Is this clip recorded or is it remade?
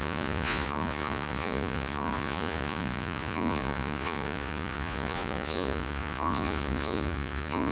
remade